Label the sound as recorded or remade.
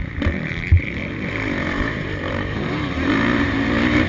remade